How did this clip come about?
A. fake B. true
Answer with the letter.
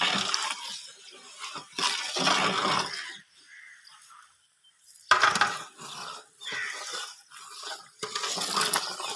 B